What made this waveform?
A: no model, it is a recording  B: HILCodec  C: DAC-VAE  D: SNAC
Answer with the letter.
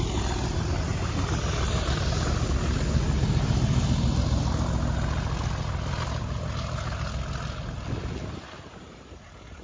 A